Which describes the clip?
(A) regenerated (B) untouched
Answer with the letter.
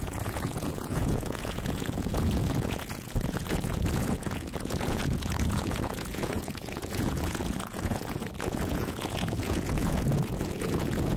A